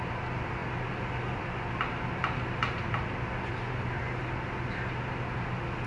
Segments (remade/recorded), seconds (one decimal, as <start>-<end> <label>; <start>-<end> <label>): 0.0-5.9 recorded